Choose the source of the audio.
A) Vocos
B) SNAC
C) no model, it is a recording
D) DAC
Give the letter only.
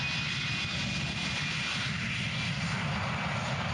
C